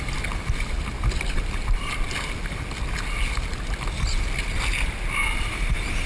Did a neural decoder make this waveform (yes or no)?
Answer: no